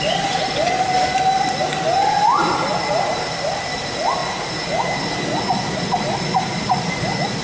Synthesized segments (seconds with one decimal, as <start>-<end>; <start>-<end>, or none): 0.0-1.7; 2.5-4.2; 5.7-7.4